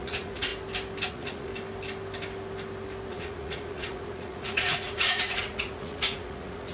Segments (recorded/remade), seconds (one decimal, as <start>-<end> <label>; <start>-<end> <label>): 0.0-0.5 remade; 0.5-1.1 recorded; 1.1-1.5 remade; 1.5-3.1 recorded; 3.1-6.7 remade